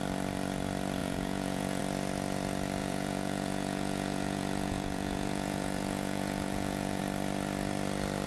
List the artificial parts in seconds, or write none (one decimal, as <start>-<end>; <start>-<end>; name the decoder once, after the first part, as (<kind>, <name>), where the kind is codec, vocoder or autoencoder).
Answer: 1.0-1.8 (vocoder, Vocos); 2.8-7.0